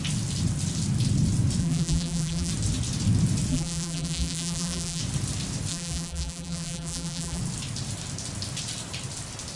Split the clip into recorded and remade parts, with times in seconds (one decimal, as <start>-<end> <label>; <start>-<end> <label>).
0.0-1.6 recorded; 1.6-2.5 remade; 2.5-3.5 recorded; 3.5-5.0 remade; 5.0-5.7 recorded; 5.7-7.4 remade; 7.4-9.6 recorded